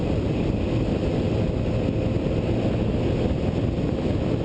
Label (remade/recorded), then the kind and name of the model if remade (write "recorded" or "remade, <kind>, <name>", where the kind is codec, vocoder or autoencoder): recorded